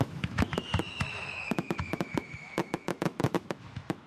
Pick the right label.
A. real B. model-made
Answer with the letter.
B